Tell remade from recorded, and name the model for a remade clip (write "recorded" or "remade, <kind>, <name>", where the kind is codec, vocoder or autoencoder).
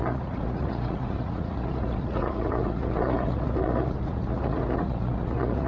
remade, vocoder, Vocos